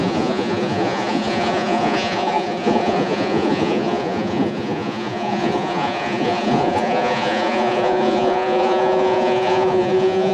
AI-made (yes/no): yes